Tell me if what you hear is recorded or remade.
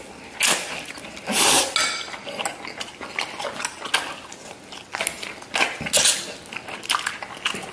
recorded